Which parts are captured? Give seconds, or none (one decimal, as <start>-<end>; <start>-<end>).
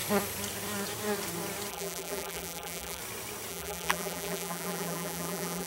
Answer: 0.0-1.7; 3.0-3.5